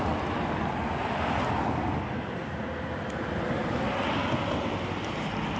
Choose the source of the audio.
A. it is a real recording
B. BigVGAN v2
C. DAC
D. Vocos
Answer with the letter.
A